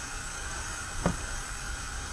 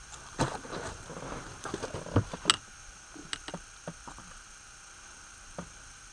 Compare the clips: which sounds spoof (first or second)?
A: first